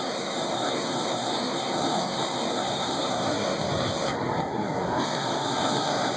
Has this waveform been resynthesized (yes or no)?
yes